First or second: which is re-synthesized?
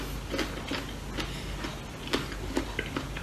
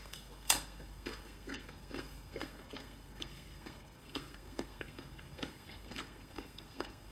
second